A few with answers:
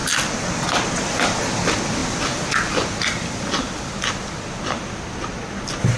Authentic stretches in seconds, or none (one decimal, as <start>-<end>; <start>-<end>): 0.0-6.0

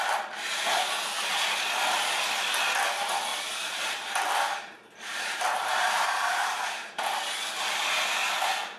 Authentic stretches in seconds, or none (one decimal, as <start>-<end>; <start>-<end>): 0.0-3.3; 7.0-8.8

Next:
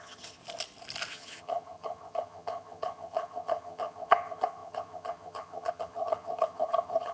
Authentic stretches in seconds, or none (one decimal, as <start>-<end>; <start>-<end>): 0.4-1.1